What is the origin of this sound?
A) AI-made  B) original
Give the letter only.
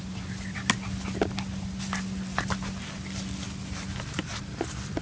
B